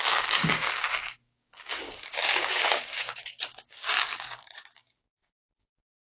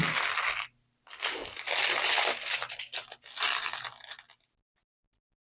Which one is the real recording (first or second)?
second